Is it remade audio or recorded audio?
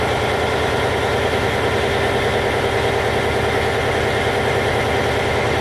recorded